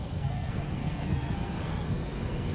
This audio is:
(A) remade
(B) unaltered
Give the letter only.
A